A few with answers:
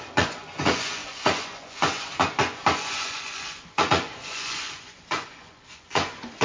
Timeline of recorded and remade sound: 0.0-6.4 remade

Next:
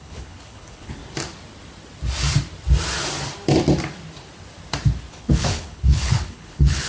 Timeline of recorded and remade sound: 0.0-1.0 remade; 1.0-5.1 recorded; 5.1-6.9 remade